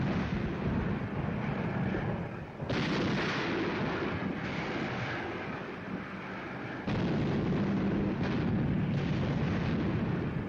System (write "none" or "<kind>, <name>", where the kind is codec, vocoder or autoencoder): none